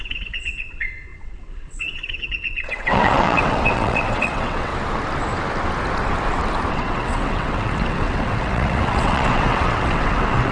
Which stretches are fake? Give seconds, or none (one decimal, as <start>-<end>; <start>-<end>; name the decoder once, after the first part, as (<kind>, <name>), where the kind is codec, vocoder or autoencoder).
0.0-4.7 (vocoder, WaveNeXt); 6.7-10.5